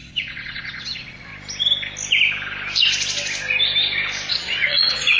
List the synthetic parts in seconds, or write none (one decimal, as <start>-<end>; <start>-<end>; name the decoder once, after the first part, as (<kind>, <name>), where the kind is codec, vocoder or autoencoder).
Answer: 0.0-1.3 (vocoder, Vocos); 4.3-5.2